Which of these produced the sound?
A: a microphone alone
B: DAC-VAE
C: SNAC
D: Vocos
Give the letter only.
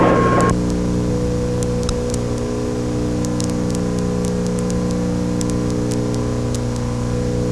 A